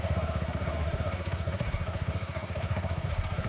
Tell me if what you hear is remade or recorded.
remade